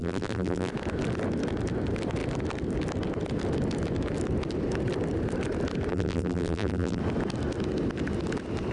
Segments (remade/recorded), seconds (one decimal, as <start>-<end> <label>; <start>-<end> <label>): 0.0-0.7 remade; 0.7-5.9 recorded; 5.9-7.0 remade; 7.0-8.7 recorded